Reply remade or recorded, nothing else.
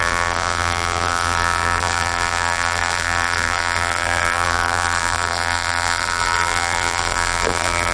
remade